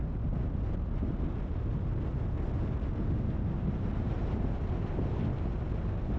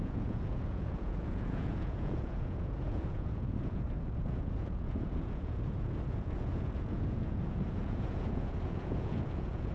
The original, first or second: first